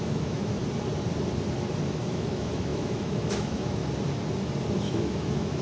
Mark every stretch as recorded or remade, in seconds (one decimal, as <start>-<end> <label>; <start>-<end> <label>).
0.0-0.6 remade; 0.6-2.1 recorded; 2.1-3.8 remade; 3.8-4.8 recorded; 4.8-5.6 remade